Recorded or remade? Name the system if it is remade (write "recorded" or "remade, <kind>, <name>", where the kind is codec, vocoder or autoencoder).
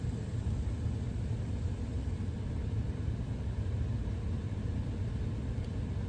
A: recorded